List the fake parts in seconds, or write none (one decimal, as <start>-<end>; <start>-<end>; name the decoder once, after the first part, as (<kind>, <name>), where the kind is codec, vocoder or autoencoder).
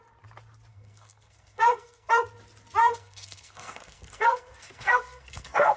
0.7-2.1 (codec, SNAC); 2.8-5.8